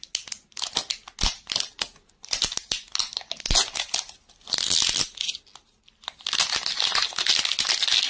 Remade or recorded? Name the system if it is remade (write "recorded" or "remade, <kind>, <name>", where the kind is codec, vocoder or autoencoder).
recorded